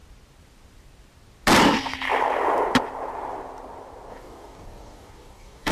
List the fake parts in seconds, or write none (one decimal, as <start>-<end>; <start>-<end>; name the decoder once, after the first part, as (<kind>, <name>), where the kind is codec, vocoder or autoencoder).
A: 4.1-5.7 (codec, DAC)